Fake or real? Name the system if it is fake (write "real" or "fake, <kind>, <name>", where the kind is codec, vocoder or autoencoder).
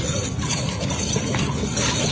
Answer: real